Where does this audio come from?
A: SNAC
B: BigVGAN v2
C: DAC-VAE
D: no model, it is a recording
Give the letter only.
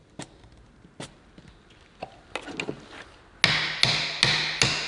D